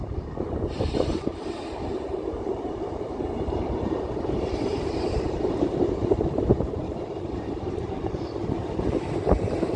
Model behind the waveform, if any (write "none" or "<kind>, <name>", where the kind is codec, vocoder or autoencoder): vocoder, BigVGAN v2